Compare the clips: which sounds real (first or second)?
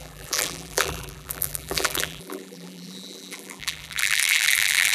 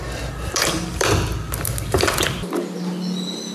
second